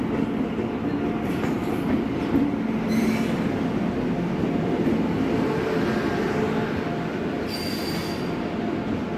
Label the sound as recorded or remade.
recorded